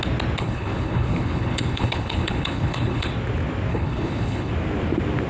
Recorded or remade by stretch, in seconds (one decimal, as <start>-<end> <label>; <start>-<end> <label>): 0.0-0.4 recorded; 0.4-3.1 remade; 3.1-3.7 recorded; 3.7-4.5 remade; 4.5-5.3 recorded